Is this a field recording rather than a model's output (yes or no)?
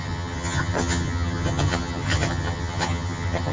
no